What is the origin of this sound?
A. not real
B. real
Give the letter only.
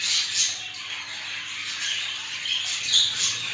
B